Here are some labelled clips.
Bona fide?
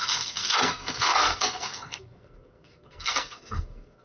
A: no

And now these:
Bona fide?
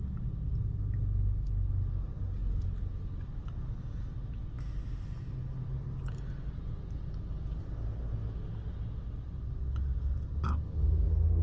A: yes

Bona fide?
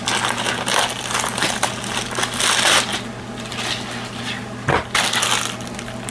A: yes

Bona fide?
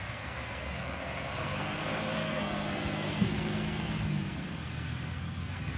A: no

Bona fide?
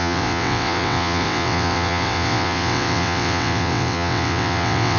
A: no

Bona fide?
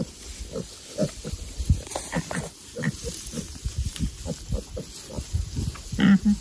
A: yes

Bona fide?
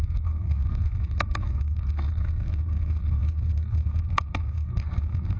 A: no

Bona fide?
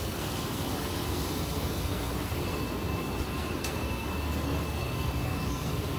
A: no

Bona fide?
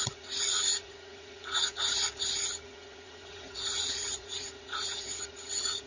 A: no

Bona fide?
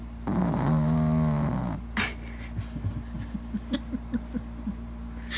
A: yes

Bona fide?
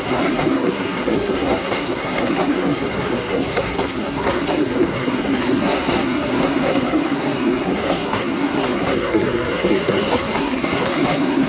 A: no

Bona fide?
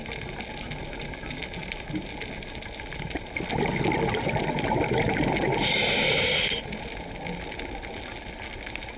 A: yes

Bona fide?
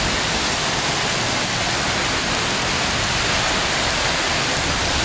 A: yes